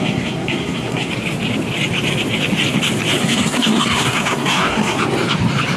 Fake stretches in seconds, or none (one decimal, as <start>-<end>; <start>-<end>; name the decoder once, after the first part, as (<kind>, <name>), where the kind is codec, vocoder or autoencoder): 0.0-1.1 (codec, SNAC); 3.2-5.0